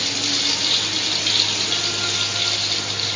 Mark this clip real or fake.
real